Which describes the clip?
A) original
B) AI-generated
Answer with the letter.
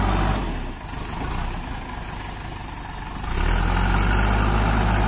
A